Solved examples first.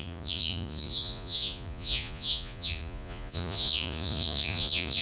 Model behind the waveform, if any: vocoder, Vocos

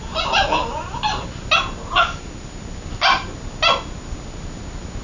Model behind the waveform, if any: none